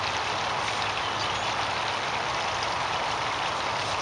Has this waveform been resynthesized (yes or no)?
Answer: no